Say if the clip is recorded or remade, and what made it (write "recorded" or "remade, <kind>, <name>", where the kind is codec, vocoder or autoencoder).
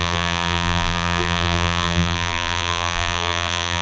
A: remade, vocoder, BigVGAN v2